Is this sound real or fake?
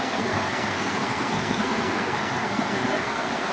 fake